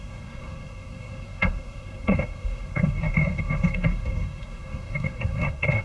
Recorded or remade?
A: remade